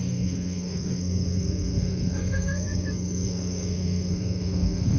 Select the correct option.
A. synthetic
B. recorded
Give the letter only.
A